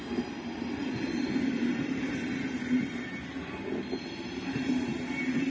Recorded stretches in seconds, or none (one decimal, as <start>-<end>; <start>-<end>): 0.0-5.5